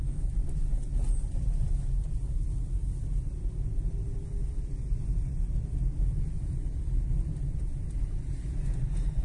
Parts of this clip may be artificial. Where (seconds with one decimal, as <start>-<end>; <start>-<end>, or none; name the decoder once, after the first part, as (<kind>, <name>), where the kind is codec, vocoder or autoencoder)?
none